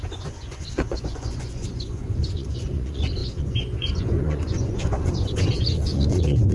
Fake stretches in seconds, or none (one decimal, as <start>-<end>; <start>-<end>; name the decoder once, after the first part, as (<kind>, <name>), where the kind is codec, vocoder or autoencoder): 0.0-6.5 (vocoder, Vocos)